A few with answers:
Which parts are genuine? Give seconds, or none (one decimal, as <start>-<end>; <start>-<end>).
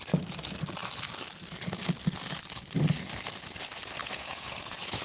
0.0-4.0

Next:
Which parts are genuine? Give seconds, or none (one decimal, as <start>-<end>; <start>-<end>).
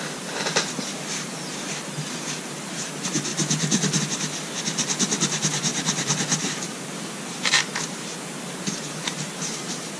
none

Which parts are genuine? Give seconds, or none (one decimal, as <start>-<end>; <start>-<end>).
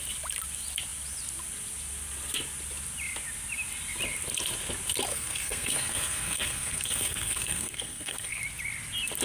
0.0-5.1; 8.4-9.2